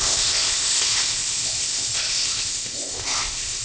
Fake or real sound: fake